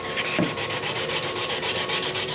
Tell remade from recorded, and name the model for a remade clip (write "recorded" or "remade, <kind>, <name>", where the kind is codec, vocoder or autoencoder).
recorded